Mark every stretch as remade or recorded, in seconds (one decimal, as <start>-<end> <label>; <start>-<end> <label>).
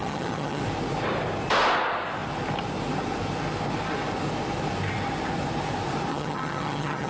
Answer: 0.0-0.6 remade; 0.6-6.1 recorded; 6.1-7.1 remade